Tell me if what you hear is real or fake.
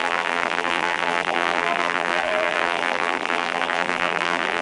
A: fake